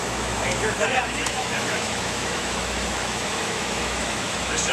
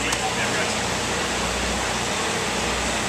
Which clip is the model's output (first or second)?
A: first